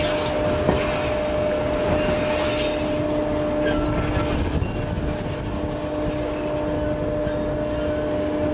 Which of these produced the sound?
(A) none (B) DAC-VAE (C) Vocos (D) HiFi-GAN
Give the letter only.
A